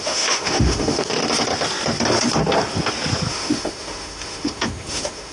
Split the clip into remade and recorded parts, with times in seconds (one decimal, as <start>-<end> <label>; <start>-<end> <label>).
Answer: 0.0-1.2 remade; 1.2-3.3 recorded; 3.3-5.3 remade